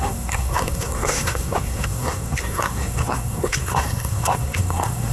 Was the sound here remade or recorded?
remade